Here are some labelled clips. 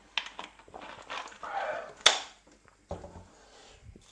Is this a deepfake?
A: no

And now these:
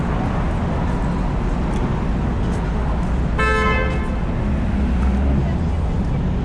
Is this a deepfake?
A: no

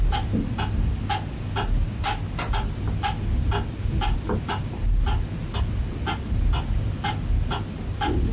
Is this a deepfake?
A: no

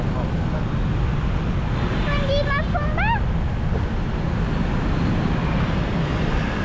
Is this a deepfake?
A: no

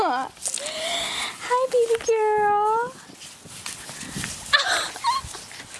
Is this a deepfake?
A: no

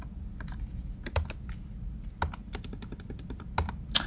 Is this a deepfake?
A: no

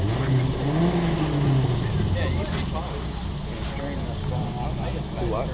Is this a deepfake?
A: no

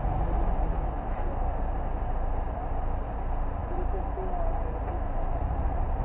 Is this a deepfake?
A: no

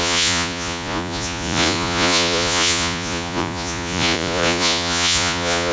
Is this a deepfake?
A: yes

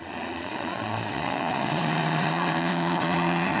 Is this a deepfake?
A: yes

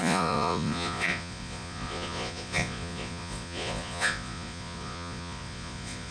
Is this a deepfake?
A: yes